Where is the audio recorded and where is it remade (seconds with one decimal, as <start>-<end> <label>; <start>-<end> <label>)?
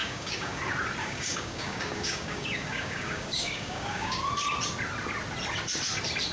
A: 0.0-0.6 remade; 0.6-1.0 recorded; 1.0-4.2 remade; 4.2-6.3 recorded